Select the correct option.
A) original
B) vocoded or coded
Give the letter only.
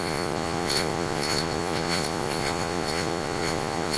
B